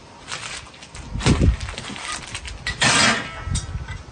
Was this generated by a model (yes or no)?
no